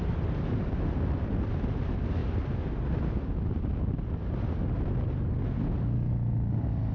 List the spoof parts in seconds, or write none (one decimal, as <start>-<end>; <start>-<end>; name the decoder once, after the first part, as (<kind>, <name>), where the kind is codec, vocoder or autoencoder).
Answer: none